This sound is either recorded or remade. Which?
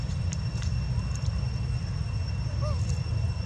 recorded